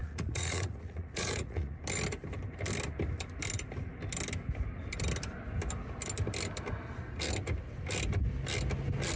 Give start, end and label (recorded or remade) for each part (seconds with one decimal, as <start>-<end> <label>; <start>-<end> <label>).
0.0-1.8 remade; 1.8-9.2 recorded